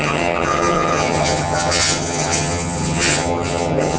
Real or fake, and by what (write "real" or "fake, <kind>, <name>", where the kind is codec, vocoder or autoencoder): fake, vocoder, HiFi-GAN